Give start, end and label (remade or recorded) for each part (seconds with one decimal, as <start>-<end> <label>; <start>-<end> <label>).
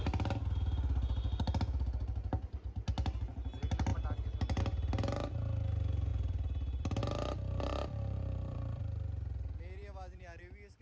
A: 0.0-6.1 recorded; 6.1-7.0 remade; 7.0-7.7 recorded; 7.7-8.8 remade; 8.8-9.8 recorded; 9.8-10.4 remade; 10.4-10.8 recorded